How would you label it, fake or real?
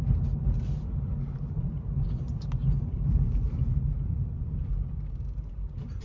fake